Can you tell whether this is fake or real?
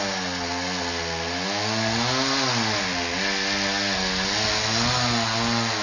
real